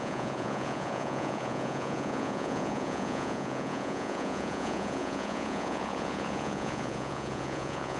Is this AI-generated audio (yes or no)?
yes